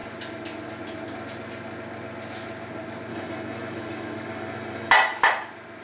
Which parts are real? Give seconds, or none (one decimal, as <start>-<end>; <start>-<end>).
0.0-3.1; 4.9-5.8